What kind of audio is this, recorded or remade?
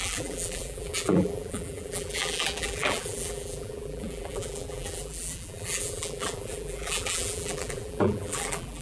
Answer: remade